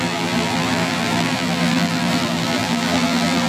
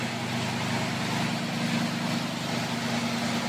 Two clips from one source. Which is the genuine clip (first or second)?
second